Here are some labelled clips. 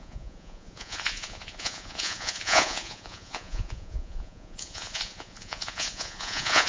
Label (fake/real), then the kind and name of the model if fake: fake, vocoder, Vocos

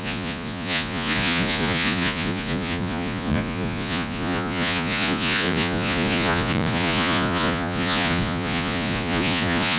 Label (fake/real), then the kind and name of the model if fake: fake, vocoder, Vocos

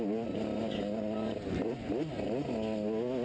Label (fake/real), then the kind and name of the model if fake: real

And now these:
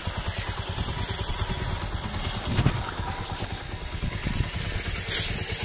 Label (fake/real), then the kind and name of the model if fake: real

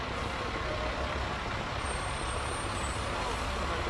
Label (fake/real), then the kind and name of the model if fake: real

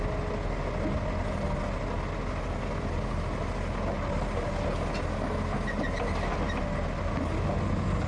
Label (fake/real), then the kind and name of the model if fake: real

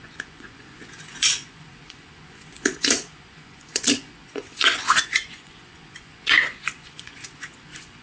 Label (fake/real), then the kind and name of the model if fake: fake, vocoder, Vocos